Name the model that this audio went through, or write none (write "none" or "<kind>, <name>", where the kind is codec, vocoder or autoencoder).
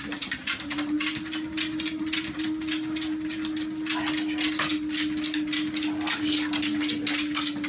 none